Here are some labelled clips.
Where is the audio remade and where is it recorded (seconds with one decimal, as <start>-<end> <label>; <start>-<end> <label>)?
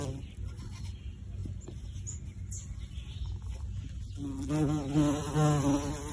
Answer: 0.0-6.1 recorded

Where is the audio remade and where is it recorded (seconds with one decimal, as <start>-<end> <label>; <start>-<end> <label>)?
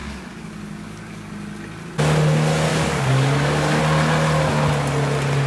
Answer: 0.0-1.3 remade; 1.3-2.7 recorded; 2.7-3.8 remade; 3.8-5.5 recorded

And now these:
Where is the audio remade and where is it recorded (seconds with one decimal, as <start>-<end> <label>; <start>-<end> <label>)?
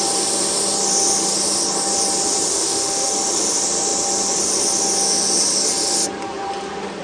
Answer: 0.0-2.5 recorded; 2.5-3.1 remade; 3.1-7.0 recorded